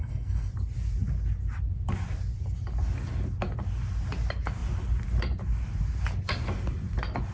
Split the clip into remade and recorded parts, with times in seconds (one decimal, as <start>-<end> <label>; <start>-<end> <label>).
0.0-0.5 remade; 0.5-7.3 recorded